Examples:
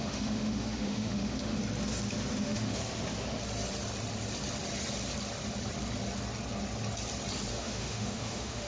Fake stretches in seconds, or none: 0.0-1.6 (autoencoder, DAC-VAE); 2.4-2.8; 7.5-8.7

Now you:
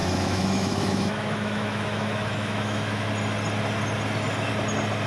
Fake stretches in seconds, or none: 0.0-3.1 (autoencoder, DAC-VAE)

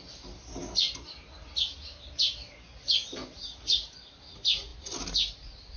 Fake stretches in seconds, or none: none